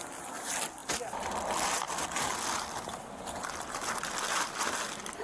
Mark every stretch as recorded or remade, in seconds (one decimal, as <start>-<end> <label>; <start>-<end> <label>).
0.0-5.2 recorded